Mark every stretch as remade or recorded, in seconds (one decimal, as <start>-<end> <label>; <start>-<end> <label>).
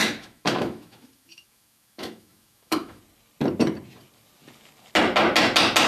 0.0-3.0 remade; 3.0-5.9 recorded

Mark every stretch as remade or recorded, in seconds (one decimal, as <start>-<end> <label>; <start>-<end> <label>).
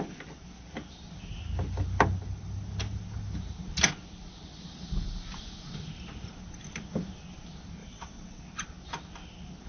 0.0-7.8 recorded; 7.8-8.4 remade; 8.4-9.7 recorded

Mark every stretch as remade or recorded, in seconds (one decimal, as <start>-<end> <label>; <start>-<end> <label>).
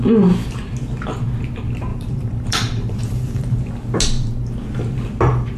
0.0-1.9 recorded; 1.9-3.7 remade; 3.7-5.6 recorded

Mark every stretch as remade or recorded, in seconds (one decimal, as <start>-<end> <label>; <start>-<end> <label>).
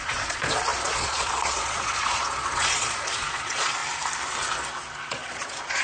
0.0-3.8 remade; 3.8-5.1 recorded; 5.1-5.8 remade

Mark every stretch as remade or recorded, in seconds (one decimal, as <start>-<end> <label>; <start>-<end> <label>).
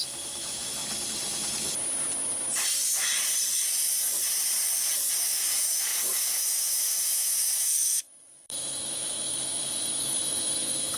0.0-0.8 remade; 0.8-5.2 recorded; 5.2-11.0 remade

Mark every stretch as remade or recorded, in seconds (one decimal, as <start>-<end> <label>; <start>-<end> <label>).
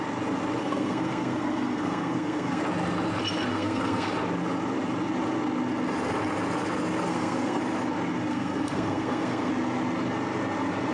0.0-0.6 recorded; 0.6-2.6 remade; 2.6-3.5 recorded; 3.5-4.1 remade; 4.1-7.1 recorded; 7.1-7.6 remade; 7.6-8.3 recorded; 8.3-9.5 remade; 9.5-10.9 recorded